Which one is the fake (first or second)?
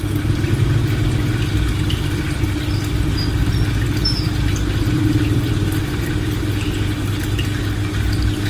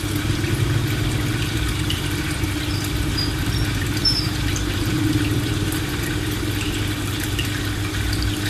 second